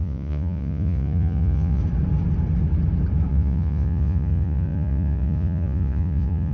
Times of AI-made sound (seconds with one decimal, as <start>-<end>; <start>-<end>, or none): 0.0-1.8; 3.3-6.5